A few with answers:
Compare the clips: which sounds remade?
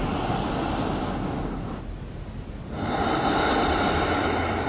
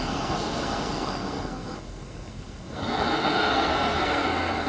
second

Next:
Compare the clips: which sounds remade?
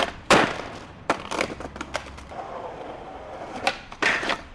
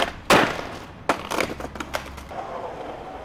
first